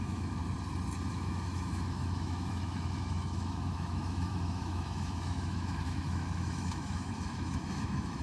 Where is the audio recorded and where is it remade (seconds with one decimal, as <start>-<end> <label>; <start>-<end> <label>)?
0.0-0.4 remade; 0.4-1.1 recorded; 1.1-8.2 remade